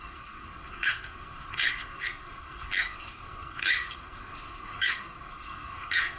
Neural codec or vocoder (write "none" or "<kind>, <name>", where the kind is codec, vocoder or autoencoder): codec, SNAC